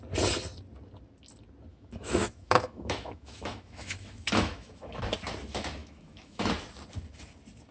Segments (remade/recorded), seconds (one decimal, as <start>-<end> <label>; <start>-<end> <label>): 0.0-1.7 recorded; 1.7-5.0 remade; 5.0-5.8 recorded; 5.8-6.5 remade; 6.5-7.7 recorded